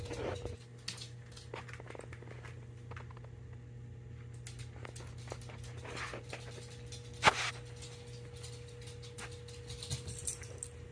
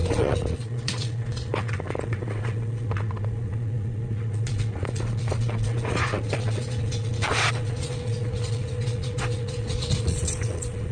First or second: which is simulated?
second